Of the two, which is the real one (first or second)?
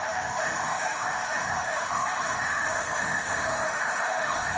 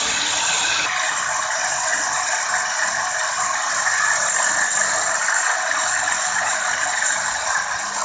second